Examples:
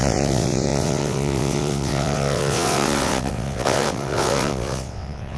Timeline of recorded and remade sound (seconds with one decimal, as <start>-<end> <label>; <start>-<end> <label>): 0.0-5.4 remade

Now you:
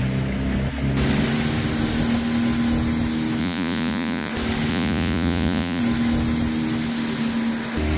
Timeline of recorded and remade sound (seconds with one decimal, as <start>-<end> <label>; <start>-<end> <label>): 0.0-3.4 recorded; 3.4-4.3 remade; 4.3-4.7 recorded; 4.7-5.8 remade; 5.8-8.0 recorded

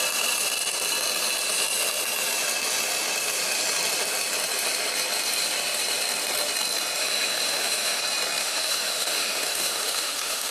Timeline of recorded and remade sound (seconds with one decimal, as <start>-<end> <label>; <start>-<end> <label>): 0.0-7.0 recorded; 7.0-8.0 remade; 8.0-8.4 recorded; 8.4-10.5 remade

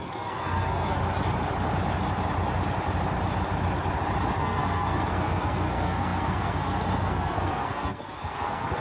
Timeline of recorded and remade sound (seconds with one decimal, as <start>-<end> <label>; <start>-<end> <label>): 0.0-1.0 remade; 1.0-4.4 recorded; 4.4-8.8 remade